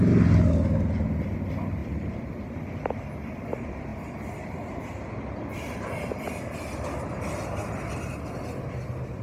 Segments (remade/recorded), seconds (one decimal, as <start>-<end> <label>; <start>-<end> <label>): 0.0-1.8 recorded; 1.8-3.1 remade; 3.1-3.9 recorded; 3.9-4.5 remade; 4.5-9.2 recorded